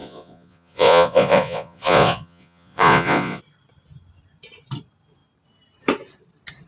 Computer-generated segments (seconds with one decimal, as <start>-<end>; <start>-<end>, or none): 0.0-3.4